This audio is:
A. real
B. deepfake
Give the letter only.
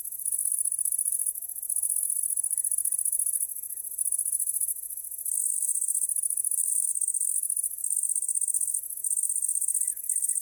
B